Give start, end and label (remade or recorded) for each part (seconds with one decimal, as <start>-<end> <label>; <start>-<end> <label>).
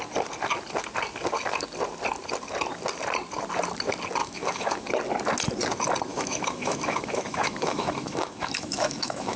0.0-4.2 recorded; 4.2-4.9 remade; 4.9-6.1 recorded; 6.1-9.4 remade